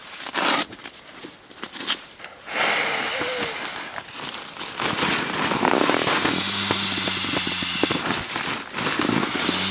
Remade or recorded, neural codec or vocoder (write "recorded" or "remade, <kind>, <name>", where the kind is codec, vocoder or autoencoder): recorded